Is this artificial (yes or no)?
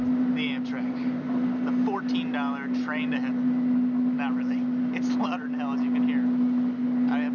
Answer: no